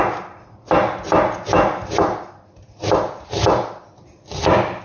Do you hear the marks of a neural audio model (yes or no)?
no